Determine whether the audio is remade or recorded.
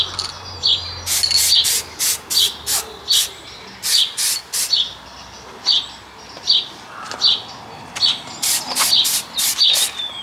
recorded